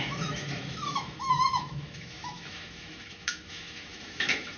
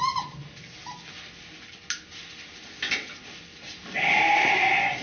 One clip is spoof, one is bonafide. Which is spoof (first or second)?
first